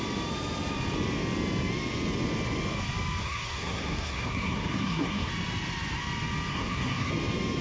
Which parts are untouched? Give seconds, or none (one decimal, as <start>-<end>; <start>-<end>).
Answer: 0.0-3.2; 5.3-6.5; 7.1-7.6